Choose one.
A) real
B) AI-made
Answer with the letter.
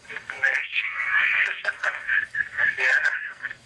B